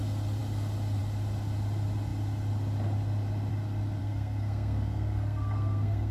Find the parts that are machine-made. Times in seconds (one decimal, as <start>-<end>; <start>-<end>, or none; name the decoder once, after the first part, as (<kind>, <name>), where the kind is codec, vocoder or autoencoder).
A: 4.0-6.1 (codec, SNAC)